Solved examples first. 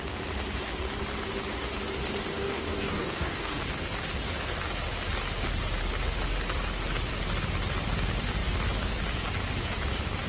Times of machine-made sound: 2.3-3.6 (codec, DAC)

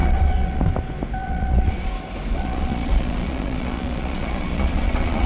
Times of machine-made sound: 0.0-0.6 (vocoder, Vocos); 1.2-1.9; 2.3-5.3